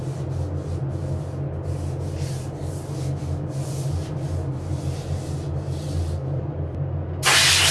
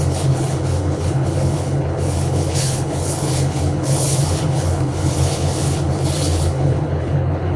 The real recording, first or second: first